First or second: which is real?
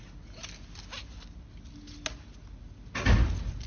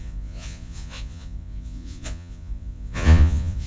first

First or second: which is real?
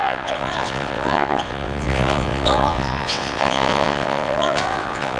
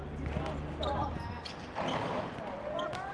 second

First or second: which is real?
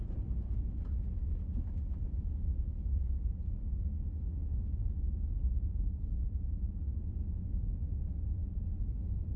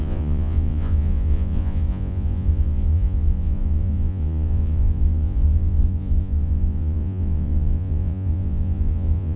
first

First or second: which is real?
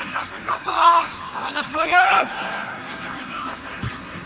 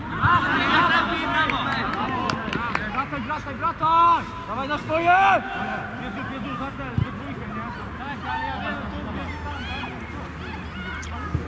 second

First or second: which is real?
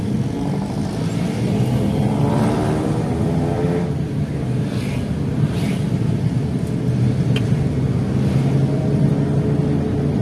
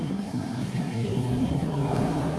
first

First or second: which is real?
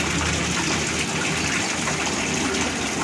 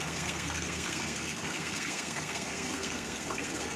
first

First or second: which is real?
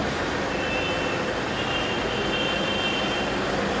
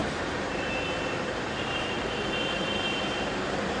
first